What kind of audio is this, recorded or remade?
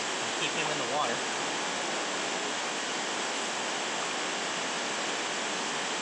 recorded